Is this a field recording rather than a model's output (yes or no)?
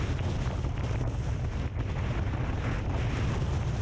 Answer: yes